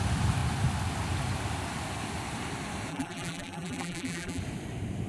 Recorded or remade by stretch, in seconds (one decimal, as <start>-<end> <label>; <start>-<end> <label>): 0.0-2.9 recorded; 2.9-4.4 remade; 4.4-5.1 recorded